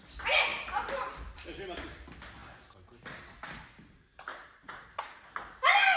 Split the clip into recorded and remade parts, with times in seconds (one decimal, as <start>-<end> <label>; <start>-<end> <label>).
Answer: 0.0-4.3 recorded; 4.3-5.3 remade; 5.3-6.0 recorded